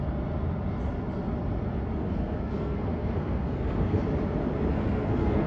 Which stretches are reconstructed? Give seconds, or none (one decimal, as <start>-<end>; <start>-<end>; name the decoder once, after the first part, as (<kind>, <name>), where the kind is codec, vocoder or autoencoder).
2.0-4.0 (codec, SNAC); 4.7-5.5